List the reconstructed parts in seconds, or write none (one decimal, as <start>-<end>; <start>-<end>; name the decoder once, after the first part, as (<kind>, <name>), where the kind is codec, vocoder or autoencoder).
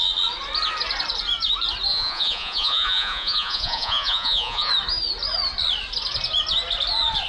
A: 1.9-4.7 (vocoder, Vocos)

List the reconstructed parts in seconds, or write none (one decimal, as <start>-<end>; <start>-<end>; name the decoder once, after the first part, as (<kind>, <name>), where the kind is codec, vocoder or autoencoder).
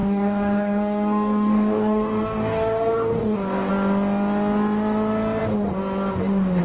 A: 0.0-3.7 (codec, DAC)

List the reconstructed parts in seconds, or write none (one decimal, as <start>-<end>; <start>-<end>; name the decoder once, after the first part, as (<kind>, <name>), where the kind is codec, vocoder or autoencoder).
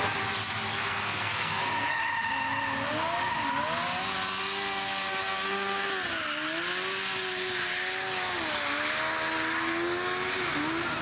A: 0.7-2.0 (codec, SNAC)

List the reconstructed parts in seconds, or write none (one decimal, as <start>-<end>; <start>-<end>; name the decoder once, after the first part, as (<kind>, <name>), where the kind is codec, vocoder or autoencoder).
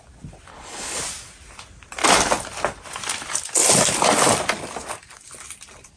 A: 0.5-1.0 (codec, HILCodec)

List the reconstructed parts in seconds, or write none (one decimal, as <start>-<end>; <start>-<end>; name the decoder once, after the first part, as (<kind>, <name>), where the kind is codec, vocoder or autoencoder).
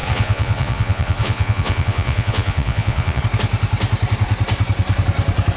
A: 0.0-3.2 (vocoder, Vocos)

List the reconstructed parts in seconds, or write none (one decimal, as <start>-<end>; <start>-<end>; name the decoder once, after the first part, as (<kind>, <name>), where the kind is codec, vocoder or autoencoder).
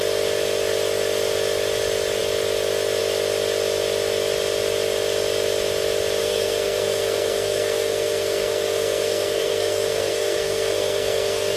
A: 6.2-11.6 (codec, SNAC)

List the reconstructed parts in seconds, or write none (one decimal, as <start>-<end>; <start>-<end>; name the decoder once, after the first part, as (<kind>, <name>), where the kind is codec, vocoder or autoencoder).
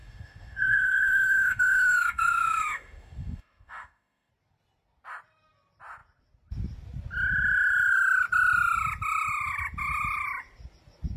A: 0.0-4.3 (autoencoder, DAC-VAE)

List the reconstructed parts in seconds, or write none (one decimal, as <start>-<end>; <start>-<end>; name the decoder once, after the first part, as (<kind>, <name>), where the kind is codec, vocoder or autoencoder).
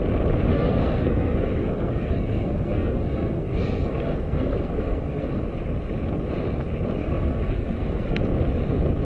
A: 0.5-5.4 (codec, SNAC); 7.0-8.2